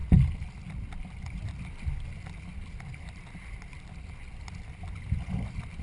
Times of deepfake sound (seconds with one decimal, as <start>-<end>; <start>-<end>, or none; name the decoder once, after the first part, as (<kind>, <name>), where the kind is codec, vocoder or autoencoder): none